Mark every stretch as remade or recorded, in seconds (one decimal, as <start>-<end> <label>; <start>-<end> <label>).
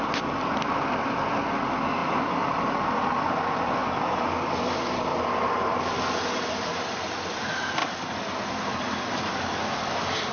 0.0-10.3 recorded